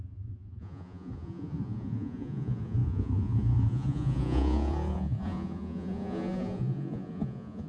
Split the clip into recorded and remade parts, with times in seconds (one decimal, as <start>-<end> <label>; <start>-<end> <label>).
0.0-7.7 remade